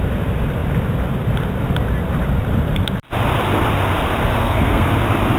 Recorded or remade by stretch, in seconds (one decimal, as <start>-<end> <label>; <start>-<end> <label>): 0.0-4.3 recorded; 4.3-4.9 remade; 4.9-5.4 recorded